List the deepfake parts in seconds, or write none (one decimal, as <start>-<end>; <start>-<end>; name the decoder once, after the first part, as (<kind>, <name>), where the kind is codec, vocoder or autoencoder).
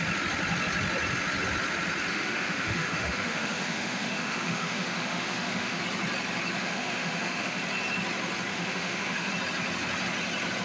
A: 2.1-5.8 (autoencoder, DAC-VAE); 6.6-7.6; 8.5-9.3